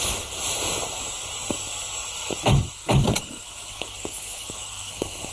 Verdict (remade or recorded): remade